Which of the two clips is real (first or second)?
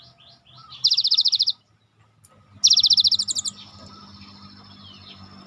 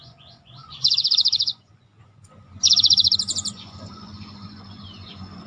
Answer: first